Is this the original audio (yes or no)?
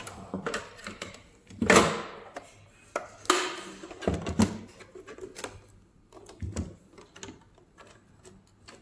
yes